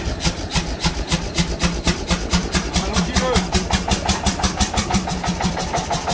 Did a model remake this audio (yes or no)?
yes